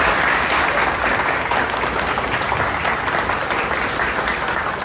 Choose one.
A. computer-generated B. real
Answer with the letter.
A